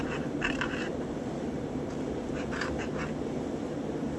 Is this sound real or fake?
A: fake